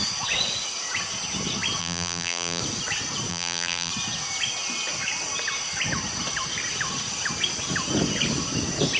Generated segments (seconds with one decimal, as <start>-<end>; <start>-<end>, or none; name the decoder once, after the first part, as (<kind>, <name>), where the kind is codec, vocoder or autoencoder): 1.8-2.6 (vocoder, BigVGAN v2); 3.3-3.9